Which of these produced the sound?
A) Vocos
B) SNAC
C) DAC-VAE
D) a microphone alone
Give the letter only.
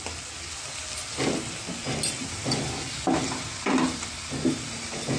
D